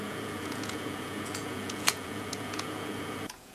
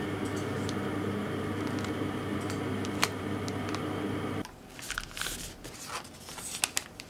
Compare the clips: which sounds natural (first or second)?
second